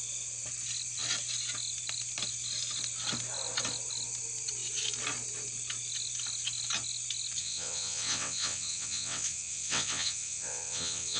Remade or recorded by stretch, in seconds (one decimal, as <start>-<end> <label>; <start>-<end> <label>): 0.0-7.4 recorded; 7.4-11.2 remade